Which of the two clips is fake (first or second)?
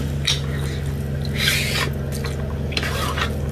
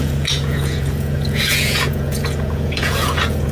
second